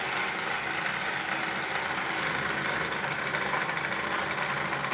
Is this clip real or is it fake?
real